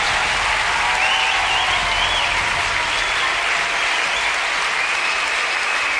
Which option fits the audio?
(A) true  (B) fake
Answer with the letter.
A